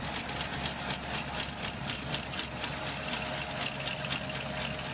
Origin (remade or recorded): remade